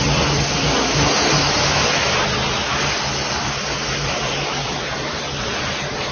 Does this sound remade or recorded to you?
recorded